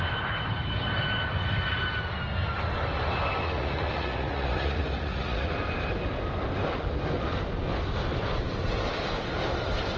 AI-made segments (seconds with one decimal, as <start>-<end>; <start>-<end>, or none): 3.4-5.5